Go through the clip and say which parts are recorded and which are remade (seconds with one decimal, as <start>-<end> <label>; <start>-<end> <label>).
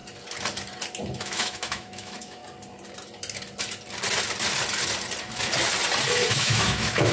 0.0-1.2 recorded; 1.2-2.4 remade; 2.4-6.3 recorded; 6.3-7.1 remade